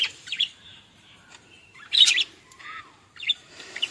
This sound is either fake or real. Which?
fake